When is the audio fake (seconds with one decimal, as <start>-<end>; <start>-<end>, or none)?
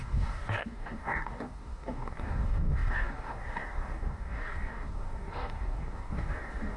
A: 0.0-6.8